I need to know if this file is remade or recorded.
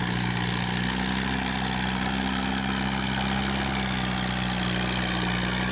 recorded